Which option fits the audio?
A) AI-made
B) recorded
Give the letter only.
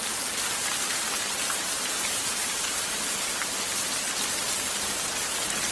B